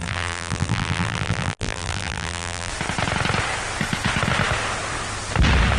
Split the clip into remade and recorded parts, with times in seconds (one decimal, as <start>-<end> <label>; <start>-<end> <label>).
0.0-2.7 remade; 2.7-5.8 recorded